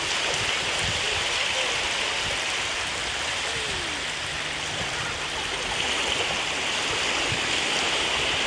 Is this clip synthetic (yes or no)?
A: no